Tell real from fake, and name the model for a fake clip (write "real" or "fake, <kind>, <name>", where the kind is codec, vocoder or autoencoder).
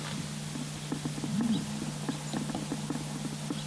real